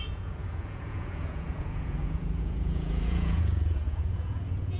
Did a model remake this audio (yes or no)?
yes